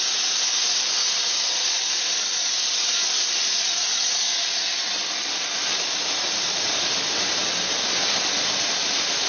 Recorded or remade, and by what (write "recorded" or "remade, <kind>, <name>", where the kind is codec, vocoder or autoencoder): recorded